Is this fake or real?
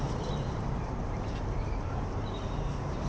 fake